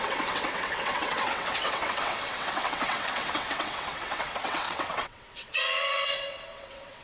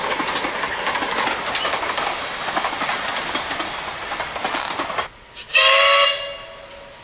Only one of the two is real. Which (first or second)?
second